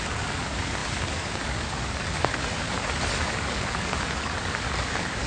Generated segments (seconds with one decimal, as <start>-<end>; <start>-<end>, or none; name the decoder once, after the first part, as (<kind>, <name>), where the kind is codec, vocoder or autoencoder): 0.0-5.3 (codec, DAC)